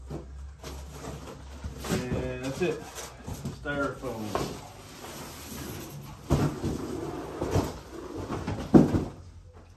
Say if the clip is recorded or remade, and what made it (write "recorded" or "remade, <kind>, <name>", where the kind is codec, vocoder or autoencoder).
recorded